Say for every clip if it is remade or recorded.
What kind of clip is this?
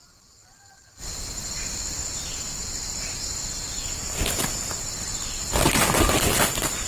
remade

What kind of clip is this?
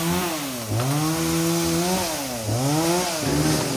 recorded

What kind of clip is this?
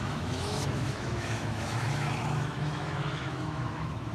remade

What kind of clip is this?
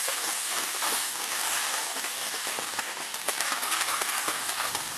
remade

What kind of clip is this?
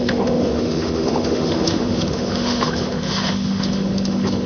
remade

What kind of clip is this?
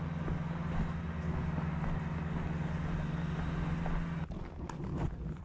recorded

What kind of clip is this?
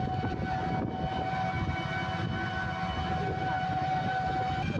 recorded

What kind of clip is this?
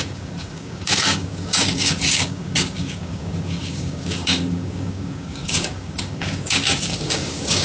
remade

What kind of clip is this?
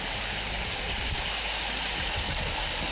recorded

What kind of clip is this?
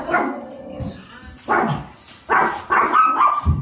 recorded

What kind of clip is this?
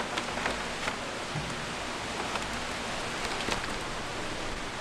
recorded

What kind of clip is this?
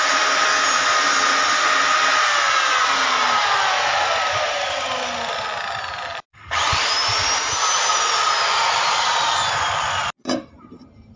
recorded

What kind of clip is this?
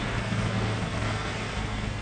remade